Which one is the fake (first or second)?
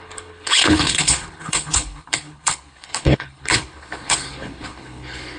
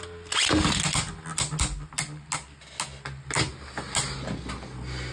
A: first